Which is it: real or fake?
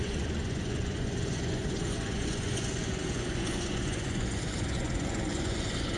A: fake